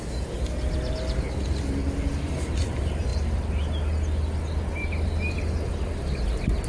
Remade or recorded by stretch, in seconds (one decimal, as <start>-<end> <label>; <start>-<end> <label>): 0.0-6.7 recorded